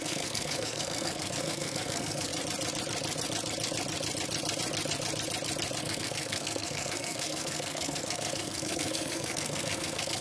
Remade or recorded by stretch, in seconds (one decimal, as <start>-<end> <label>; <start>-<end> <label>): 0.0-2.3 remade; 2.3-5.8 recorded; 5.8-10.2 remade